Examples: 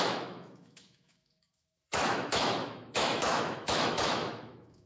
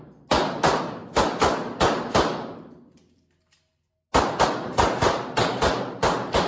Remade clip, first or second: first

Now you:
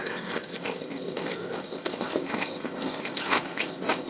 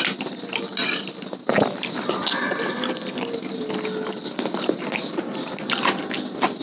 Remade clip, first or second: first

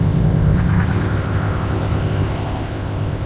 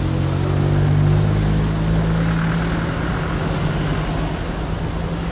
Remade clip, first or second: first